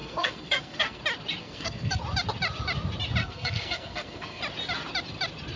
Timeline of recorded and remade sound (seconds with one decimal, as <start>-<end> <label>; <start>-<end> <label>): 0.0-1.0 remade; 1.0-1.4 recorded; 1.4-2.0 remade; 2.0-3.2 recorded; 3.2-4.4 remade; 4.4-5.6 recorded